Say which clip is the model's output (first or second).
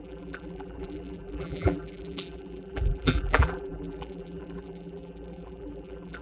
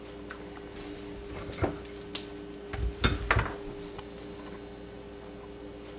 first